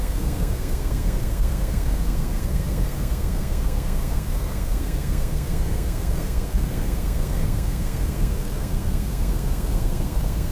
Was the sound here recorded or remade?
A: remade